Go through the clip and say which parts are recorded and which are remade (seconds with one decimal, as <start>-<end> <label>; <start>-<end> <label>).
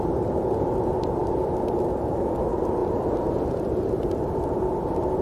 0.0-2.8 recorded; 2.8-4.8 remade; 4.8-5.2 recorded